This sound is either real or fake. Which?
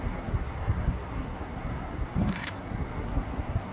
fake